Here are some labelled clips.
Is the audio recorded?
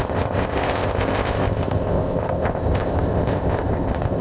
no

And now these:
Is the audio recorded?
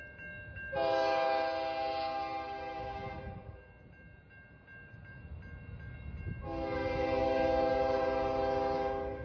yes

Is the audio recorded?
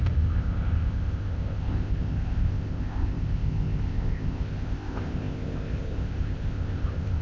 no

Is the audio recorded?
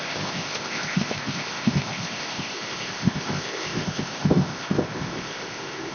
no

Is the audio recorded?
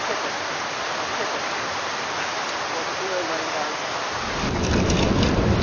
yes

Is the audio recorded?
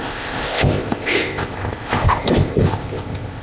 no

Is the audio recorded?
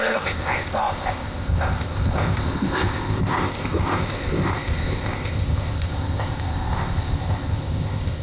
no